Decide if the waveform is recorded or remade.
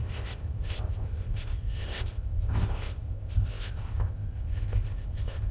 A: remade